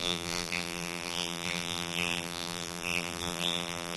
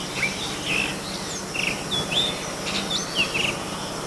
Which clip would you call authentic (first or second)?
second